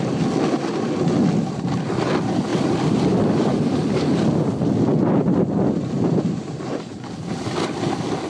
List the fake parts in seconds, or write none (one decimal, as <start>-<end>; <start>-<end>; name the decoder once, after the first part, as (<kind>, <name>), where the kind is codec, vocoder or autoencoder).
none